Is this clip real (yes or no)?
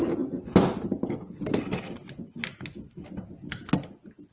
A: yes